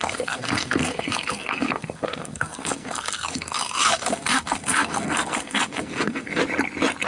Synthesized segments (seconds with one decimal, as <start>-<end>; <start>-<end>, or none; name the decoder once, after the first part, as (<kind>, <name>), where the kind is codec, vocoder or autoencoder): 0.0-6.4 (codec, SNAC)